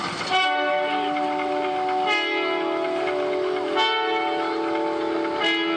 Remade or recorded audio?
recorded